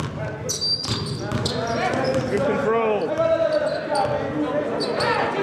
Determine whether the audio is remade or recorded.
recorded